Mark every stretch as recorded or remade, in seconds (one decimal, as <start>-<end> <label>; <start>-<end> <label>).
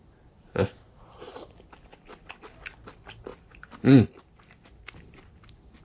0.0-5.8 recorded